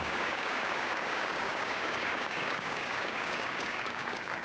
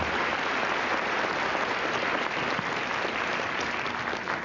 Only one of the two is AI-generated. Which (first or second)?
first